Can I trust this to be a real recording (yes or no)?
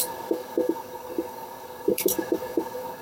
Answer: no